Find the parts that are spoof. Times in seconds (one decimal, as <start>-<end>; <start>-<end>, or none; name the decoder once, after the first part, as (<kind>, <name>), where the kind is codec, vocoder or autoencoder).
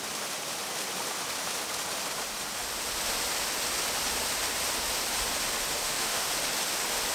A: 5.8-6.3 (autoencoder, DAC-VAE)